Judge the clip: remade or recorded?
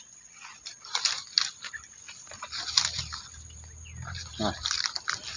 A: recorded